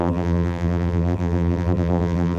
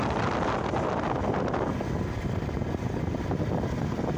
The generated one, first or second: first